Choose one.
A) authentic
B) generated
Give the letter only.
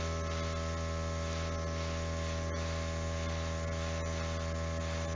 A